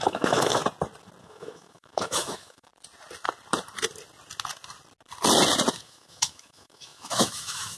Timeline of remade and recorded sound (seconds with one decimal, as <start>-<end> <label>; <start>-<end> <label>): 0.0-0.6 remade; 0.6-1.2 recorded; 1.2-2.7 remade; 2.7-5.7 recorded; 5.7-7.8 remade